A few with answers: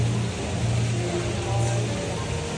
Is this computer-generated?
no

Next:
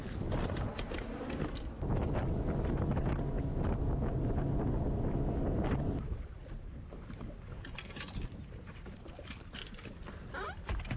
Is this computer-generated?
no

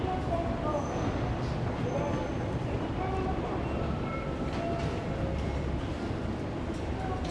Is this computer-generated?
no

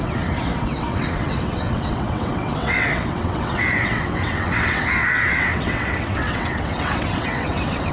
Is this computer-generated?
yes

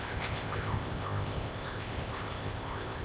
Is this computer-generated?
yes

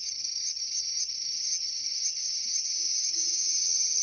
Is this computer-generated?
yes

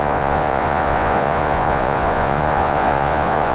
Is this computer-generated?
yes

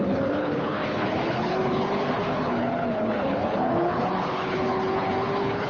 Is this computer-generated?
yes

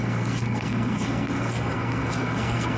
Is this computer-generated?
yes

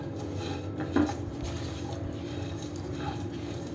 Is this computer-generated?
yes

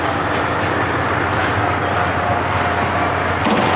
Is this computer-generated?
no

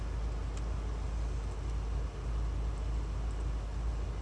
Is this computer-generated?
no